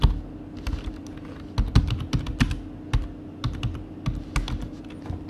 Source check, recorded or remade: recorded